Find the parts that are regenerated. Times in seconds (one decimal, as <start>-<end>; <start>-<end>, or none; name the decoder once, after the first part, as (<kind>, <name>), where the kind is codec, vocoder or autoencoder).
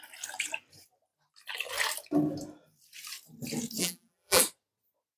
3.8-4.4 (vocoder, BigVGAN v2)